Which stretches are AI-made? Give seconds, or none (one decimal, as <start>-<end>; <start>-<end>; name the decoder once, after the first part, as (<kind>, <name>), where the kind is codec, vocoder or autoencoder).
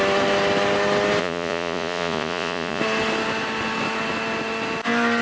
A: 1.2-2.8 (vocoder, Vocos)